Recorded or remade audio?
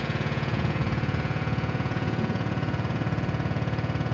remade